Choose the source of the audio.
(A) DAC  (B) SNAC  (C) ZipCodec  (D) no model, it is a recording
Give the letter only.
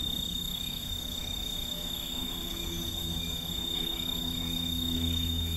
A